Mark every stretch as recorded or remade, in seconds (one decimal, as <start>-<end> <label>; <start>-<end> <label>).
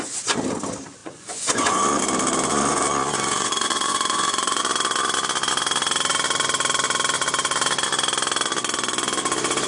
0.0-1.0 recorded; 1.0-2.0 remade; 2.0-2.5 recorded; 2.5-4.6 remade; 4.6-9.7 recorded